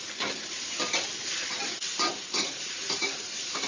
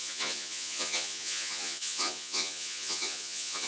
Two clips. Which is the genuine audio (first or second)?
first